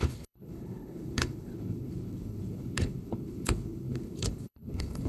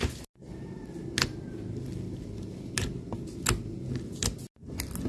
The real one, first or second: second